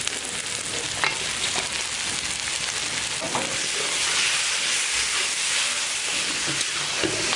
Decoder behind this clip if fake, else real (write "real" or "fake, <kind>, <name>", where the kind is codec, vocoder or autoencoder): real